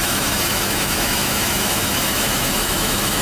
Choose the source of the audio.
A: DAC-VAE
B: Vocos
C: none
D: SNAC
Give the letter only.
A